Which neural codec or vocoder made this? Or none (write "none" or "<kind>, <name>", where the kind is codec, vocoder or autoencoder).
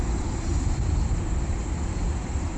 none